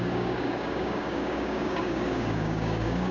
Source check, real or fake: fake